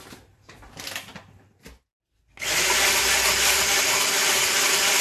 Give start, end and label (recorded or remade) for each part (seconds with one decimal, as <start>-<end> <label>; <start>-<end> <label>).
0.0-5.0 recorded